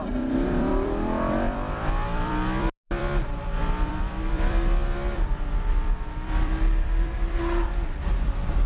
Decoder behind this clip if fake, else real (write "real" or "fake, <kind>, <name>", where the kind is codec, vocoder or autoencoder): fake, vocoder, BigVGAN v2